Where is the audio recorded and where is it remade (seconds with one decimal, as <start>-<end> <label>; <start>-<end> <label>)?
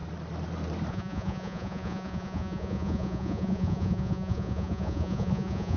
0.0-0.9 recorded; 0.9-5.8 remade